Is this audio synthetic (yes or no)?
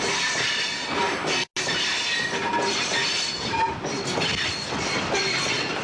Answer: no